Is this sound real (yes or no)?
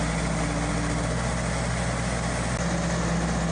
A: yes